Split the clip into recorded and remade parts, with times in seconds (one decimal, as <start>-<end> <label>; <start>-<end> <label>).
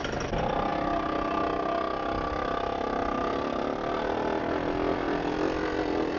0.0-6.2 recorded